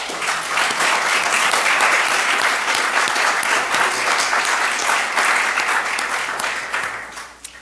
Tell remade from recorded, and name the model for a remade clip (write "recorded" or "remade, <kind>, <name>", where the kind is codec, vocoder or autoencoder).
recorded